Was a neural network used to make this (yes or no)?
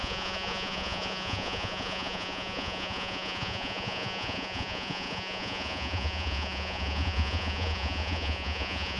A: yes